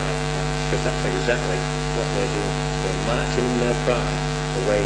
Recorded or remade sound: remade